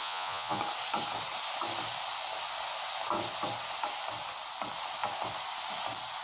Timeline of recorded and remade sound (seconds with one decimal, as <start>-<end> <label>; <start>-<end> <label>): 0.0-0.6 remade; 0.6-6.2 recorded

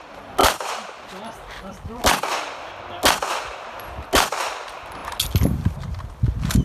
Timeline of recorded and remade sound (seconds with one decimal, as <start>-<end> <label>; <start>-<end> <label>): 0.0-6.6 recorded

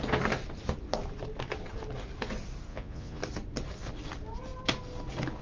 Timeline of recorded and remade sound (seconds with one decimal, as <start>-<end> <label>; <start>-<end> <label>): 0.0-2.7 recorded; 2.7-3.2 remade; 3.2-5.4 recorded

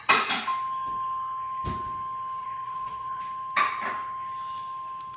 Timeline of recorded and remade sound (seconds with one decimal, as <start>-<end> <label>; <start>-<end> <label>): 0.0-2.4 recorded; 2.4-3.2 remade; 3.2-5.2 recorded

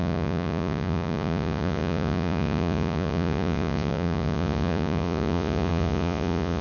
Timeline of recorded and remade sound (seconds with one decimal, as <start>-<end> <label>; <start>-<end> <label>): 0.0-6.6 remade

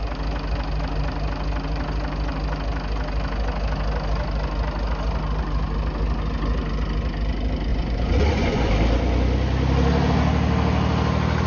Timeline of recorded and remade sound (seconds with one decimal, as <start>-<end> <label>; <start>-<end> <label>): 0.0-7.7 recorded; 7.7-8.7 remade; 8.7-11.5 recorded